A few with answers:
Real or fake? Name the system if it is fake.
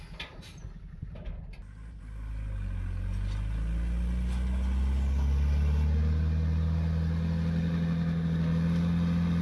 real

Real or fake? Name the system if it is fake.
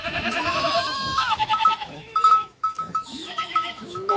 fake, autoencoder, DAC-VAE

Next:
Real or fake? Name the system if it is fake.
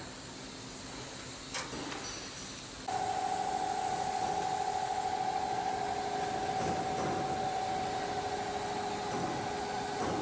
real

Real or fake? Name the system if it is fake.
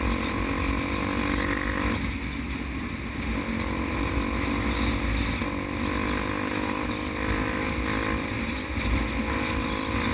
real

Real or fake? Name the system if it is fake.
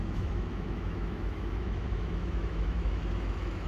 fake, autoencoder, DAC-VAE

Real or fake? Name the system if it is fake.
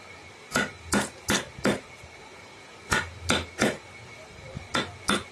real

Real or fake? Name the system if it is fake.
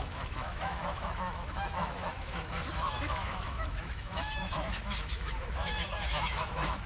fake, autoencoder, DAC-VAE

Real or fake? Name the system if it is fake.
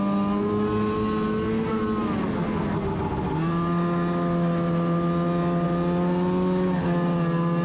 real